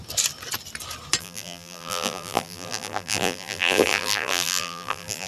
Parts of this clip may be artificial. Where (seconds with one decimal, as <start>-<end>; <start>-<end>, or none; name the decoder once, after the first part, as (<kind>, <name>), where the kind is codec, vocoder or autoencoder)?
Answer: 1.2-5.3 (vocoder, BigVGAN v2)